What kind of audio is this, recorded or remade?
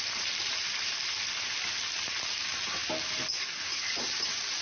recorded